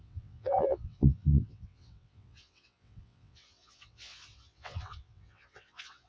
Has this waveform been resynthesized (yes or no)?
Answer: yes